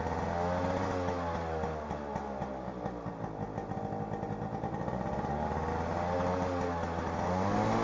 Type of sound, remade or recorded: recorded